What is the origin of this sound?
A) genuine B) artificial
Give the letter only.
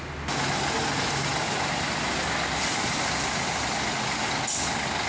A